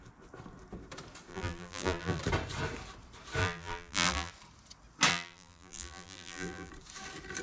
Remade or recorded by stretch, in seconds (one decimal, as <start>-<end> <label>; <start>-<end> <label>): 0.0-1.3 recorded; 1.3-2.2 remade; 2.2-3.4 recorded; 3.4-4.3 remade; 4.3-5.1 recorded; 5.1-6.7 remade; 6.7-7.4 recorded